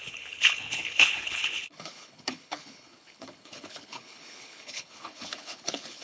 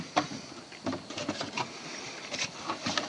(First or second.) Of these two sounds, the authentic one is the second